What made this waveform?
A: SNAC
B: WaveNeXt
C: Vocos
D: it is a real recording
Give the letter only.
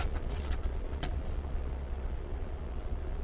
C